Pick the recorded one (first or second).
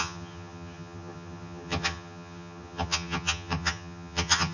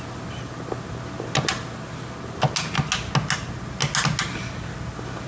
second